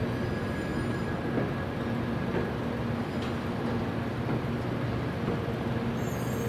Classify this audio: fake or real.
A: real